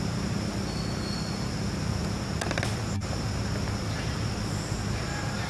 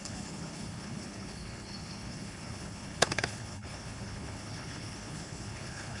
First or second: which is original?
first